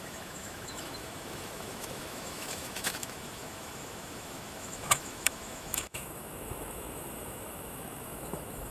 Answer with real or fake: fake